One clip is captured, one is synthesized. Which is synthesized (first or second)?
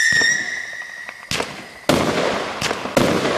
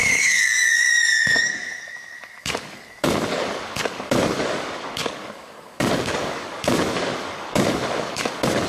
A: second